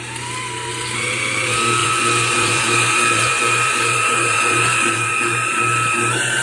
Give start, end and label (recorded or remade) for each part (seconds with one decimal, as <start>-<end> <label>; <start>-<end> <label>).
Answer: 0.0-1.8 recorded; 1.8-5.6 remade; 5.6-6.4 recorded